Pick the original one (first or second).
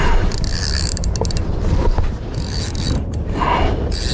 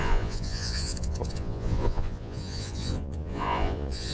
first